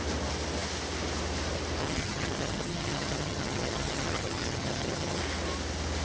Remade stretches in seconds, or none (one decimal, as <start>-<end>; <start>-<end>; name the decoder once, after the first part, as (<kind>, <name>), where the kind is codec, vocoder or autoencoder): 1.8-5.2 (vocoder, HiFi-GAN)